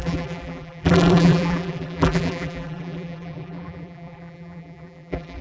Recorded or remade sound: remade